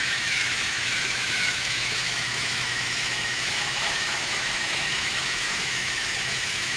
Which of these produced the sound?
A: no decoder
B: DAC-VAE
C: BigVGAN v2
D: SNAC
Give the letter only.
B